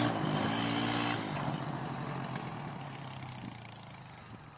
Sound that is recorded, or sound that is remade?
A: recorded